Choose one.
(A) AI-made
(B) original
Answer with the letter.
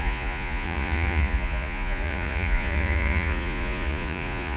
A